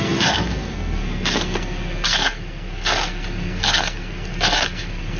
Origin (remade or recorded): remade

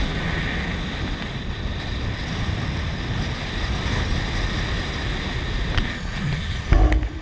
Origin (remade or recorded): recorded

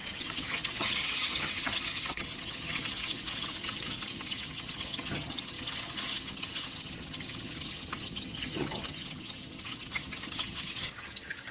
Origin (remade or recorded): remade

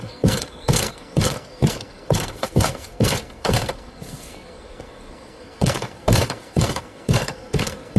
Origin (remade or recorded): remade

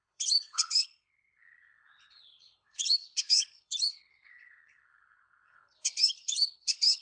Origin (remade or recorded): remade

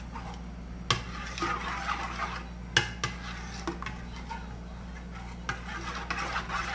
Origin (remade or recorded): recorded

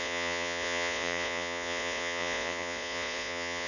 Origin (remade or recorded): remade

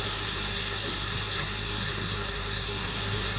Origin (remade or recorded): remade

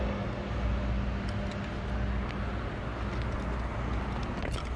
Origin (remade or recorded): recorded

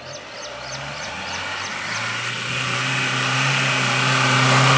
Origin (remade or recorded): recorded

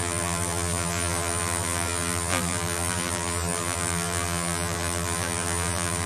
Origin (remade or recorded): remade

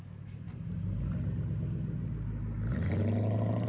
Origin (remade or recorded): recorded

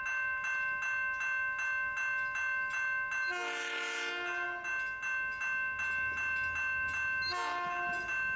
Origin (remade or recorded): recorded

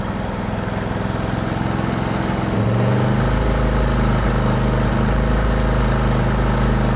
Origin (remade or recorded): recorded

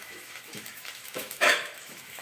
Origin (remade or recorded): remade